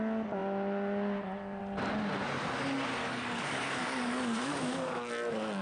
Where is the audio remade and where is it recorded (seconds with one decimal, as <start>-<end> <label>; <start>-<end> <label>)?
0.0-3.0 recorded; 3.0-5.1 remade; 5.1-5.6 recorded